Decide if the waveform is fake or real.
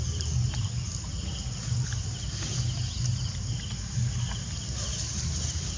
real